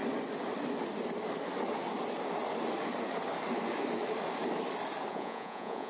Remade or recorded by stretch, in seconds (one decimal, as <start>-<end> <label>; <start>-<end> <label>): 0.0-5.1 recorded; 5.1-5.9 remade